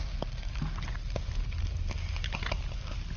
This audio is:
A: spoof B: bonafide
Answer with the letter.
B